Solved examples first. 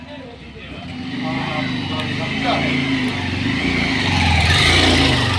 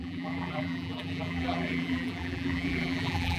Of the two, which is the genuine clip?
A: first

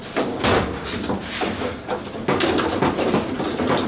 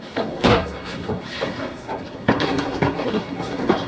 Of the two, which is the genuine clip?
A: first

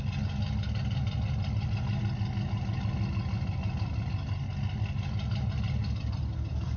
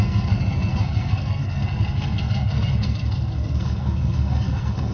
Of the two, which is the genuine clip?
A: first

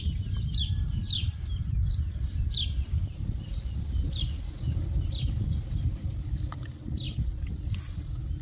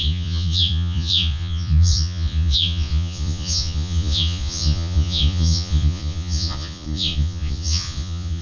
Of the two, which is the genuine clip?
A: first